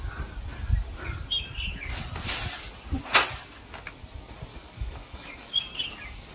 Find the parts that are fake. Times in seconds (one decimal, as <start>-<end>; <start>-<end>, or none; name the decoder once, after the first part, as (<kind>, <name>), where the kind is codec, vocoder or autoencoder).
4.5-5.6 (codec, DAC)